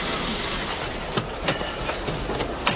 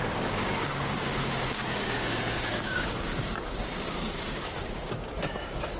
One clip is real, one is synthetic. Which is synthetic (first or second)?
second